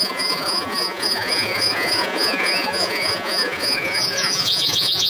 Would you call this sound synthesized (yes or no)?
yes